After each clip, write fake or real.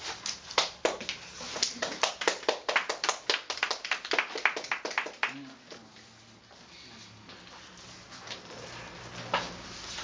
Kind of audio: real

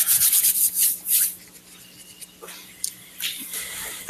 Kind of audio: fake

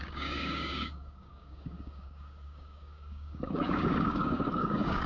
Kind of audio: fake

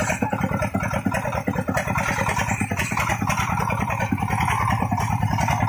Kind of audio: fake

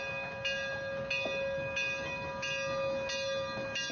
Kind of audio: real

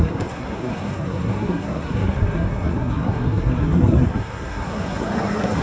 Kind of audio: fake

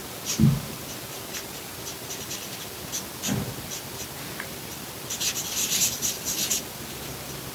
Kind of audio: real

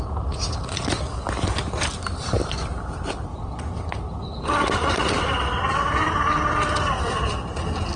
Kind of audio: real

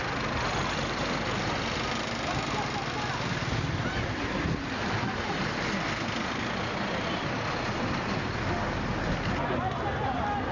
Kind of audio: real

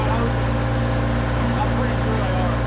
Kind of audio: real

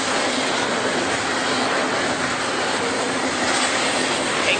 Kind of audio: real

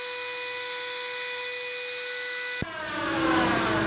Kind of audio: real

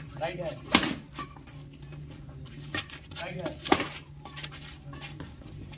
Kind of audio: real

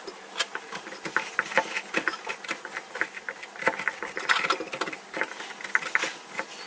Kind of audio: real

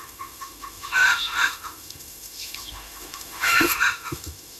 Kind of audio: fake